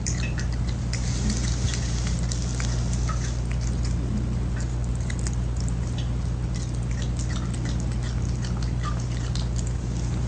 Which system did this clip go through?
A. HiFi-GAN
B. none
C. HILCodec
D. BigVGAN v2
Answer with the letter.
B